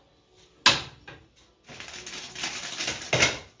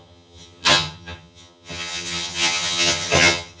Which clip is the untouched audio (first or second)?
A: first